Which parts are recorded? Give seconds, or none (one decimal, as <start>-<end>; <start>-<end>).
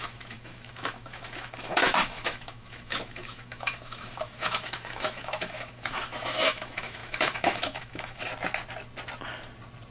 8.3-9.9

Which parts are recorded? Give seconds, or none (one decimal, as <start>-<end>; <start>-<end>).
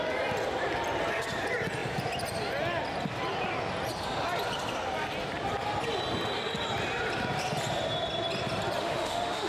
0.0-8.8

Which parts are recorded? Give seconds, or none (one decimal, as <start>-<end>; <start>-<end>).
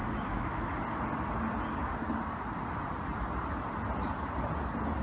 0.7-5.0